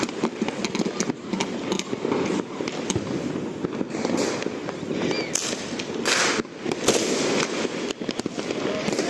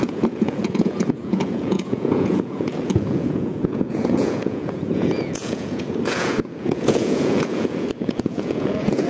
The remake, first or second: second